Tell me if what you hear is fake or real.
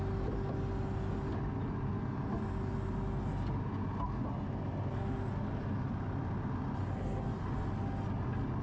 real